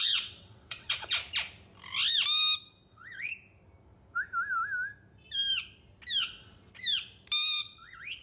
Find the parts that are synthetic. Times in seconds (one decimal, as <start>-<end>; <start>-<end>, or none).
0.0-1.2; 2.9-3.3; 6.2-6.7; 7.6-8.2